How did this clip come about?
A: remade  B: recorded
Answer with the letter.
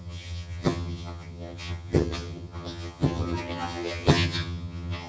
A